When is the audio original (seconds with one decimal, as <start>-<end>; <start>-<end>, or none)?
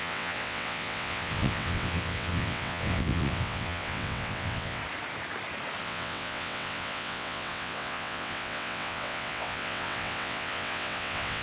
4.8-5.8